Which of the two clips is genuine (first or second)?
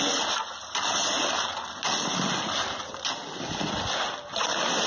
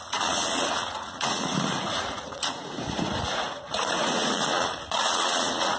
first